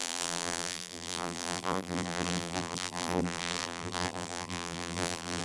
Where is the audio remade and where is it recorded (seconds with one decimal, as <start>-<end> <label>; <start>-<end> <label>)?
0.0-5.4 remade